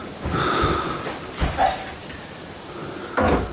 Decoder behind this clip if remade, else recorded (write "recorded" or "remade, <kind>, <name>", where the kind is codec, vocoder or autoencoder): recorded